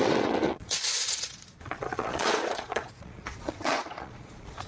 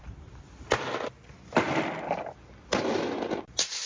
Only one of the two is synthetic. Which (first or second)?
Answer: first